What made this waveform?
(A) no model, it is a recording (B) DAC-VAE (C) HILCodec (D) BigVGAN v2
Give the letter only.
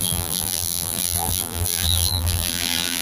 D